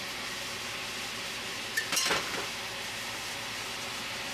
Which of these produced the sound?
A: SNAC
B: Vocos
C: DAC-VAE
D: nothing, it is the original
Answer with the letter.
D